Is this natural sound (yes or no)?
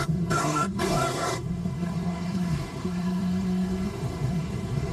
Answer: no